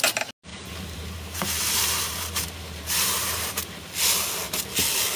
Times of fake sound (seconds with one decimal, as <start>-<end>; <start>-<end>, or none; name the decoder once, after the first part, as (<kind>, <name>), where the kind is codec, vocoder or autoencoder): 0.5-3.6 (vocoder, BigVGAN v2)